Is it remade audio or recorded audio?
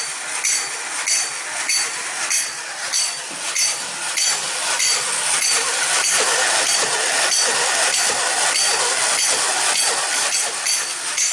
recorded